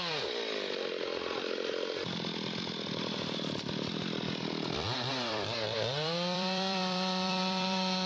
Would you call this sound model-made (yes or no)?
yes